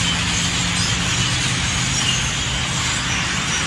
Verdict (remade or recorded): recorded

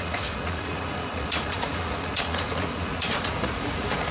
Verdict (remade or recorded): remade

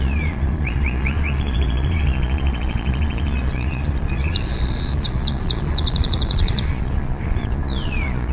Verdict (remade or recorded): remade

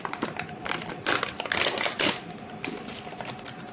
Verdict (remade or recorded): recorded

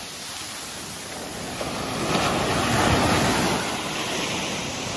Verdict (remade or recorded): recorded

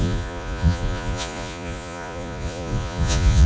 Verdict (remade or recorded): remade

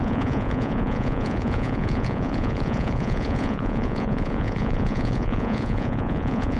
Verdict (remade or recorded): remade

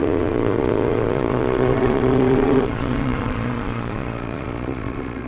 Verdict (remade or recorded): remade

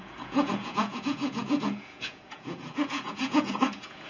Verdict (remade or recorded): remade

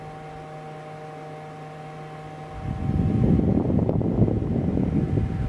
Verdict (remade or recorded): recorded